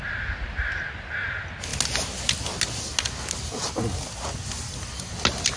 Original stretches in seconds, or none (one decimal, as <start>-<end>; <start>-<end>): 0.0-5.6